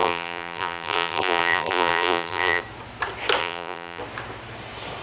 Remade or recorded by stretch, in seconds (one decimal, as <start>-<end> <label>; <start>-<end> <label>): 0.0-2.6 remade; 2.6-3.4 recorded; 3.4-4.0 remade; 4.0-5.0 recorded